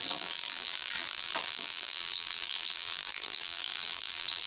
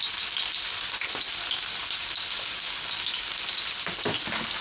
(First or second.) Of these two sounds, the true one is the second